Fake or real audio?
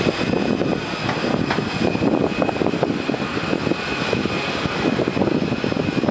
real